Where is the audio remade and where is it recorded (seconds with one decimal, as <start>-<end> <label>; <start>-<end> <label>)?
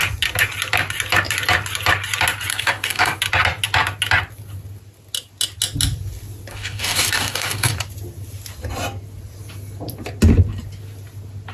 0.0-2.5 recorded; 2.5-3.2 remade; 3.2-6.5 recorded; 6.5-7.7 remade; 7.7-11.5 recorded